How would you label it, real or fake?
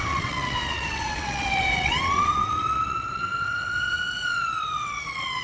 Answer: fake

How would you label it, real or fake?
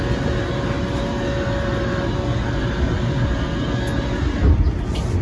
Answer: real